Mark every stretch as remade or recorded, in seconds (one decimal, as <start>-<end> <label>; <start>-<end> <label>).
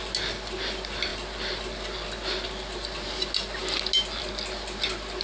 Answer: 0.0-5.2 recorded